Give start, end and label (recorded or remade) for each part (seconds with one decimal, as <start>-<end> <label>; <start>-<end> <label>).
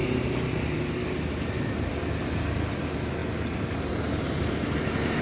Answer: 0.0-5.2 recorded